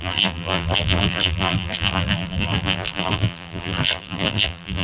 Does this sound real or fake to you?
fake